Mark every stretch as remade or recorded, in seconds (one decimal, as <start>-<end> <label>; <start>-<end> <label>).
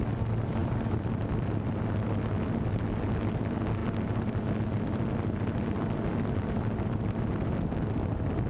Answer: 0.0-8.5 recorded